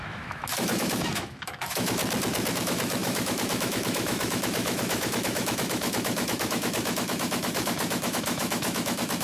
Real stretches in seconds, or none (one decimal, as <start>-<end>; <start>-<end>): 2.0-2.5